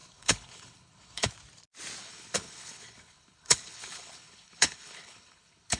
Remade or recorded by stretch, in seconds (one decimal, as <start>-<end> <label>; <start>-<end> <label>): 0.0-1.3 remade; 1.3-2.0 recorded; 2.0-5.8 remade